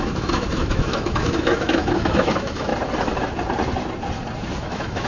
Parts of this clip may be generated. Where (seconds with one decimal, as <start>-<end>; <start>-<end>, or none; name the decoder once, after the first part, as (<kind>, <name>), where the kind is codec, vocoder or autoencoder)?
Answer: 0.0-2.7 (autoencoder, DAC-VAE); 4.6-5.1